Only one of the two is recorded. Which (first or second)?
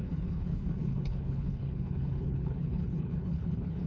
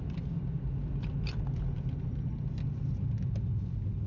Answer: second